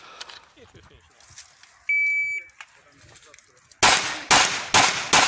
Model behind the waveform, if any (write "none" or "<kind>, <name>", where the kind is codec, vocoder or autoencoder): none